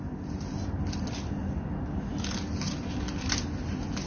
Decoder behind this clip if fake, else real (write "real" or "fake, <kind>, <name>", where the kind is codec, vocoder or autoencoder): real